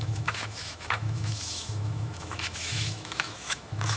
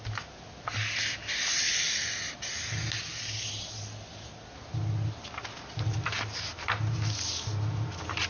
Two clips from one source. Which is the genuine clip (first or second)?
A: second